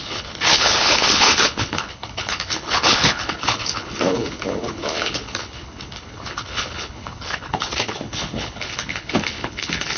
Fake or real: fake